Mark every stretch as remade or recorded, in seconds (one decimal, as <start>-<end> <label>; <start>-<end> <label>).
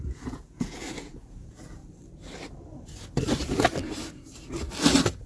0.0-1.8 remade; 1.8-5.3 recorded